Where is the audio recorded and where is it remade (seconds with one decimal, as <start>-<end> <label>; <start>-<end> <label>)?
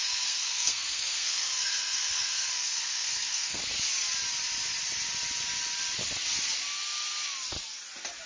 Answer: 0.0-3.6 remade; 3.6-8.3 recorded